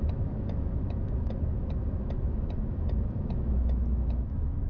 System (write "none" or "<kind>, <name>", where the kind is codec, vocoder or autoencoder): autoencoder, DAC-VAE